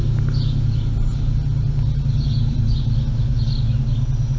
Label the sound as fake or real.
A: real